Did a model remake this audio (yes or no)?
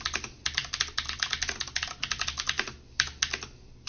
no